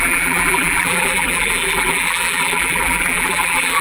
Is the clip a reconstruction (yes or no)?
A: yes